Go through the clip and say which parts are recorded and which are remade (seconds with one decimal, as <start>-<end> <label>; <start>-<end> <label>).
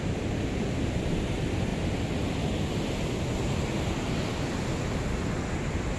0.0-6.0 recorded